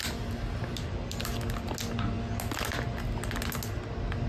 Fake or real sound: real